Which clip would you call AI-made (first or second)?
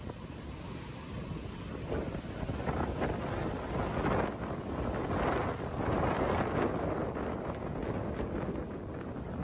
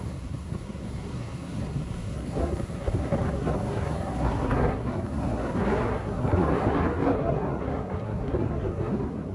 second